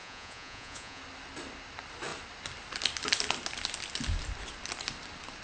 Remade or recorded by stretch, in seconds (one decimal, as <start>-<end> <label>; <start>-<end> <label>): 0.0-1.0 remade; 1.0-5.4 recorded